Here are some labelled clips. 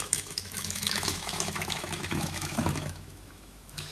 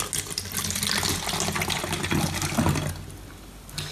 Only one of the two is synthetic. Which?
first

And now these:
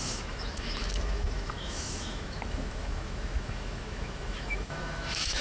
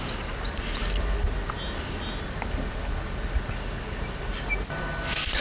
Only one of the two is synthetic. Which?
first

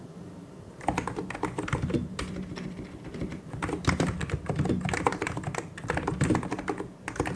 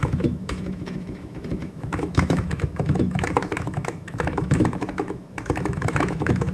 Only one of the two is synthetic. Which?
second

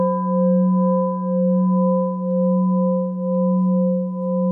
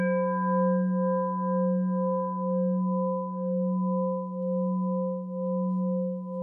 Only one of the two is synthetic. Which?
second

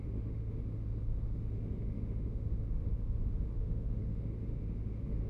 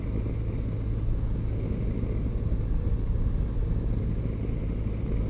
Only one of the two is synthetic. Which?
first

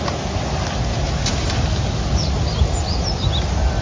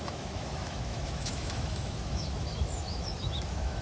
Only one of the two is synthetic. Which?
second